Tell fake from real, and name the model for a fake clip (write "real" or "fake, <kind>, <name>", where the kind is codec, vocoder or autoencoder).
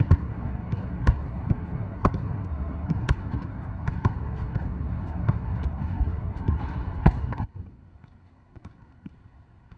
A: fake, codec, SNAC